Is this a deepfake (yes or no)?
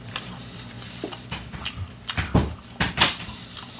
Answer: yes